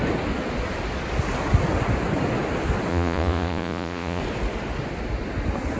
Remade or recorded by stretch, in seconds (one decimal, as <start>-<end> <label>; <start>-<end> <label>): 0.0-2.9 recorded; 2.9-4.2 remade; 4.2-5.8 recorded